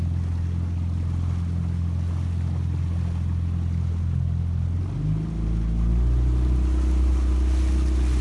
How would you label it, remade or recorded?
recorded